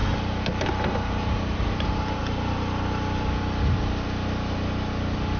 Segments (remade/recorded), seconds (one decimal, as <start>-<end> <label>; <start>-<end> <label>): 0.0-0.7 recorded; 0.7-2.2 remade; 2.2-5.4 recorded